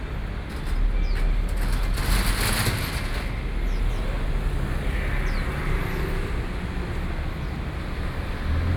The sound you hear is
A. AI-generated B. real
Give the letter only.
B